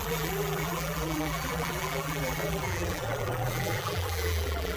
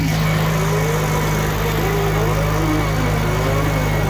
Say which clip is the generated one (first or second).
first